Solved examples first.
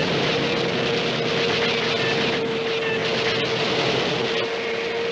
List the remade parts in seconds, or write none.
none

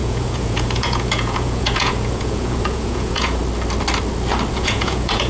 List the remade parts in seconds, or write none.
0.0-3.4 (vocoder, Vocos); 4.5-5.3